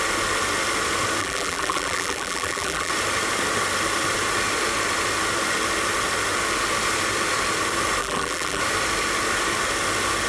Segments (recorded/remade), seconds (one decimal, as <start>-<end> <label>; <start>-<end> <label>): 0.0-1.2 recorded; 1.2-2.9 remade; 2.9-8.0 recorded; 8.0-8.6 remade; 8.6-10.3 recorded